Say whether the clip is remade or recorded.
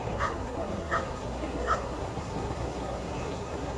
remade